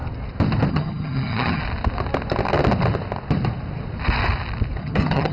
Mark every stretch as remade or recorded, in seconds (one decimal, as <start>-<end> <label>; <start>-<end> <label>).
0.0-0.7 recorded; 0.7-1.6 remade; 1.6-4.8 recorded; 4.8-5.3 remade